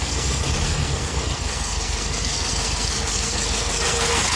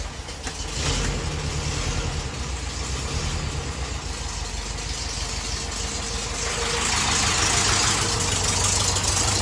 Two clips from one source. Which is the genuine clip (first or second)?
second